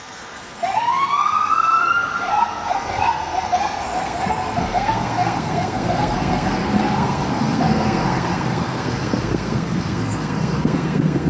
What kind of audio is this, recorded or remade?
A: remade